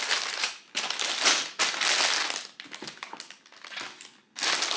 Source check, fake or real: real